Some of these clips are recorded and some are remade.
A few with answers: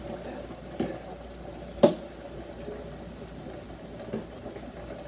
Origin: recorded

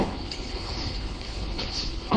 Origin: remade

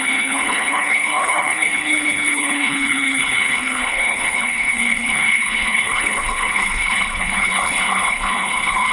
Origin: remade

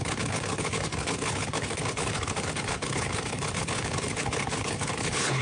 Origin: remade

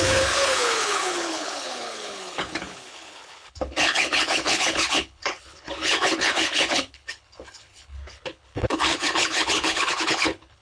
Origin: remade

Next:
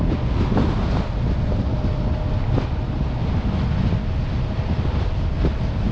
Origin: recorded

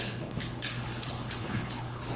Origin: remade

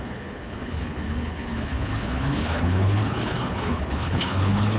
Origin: remade